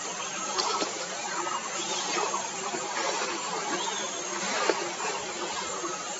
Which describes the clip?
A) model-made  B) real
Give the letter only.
A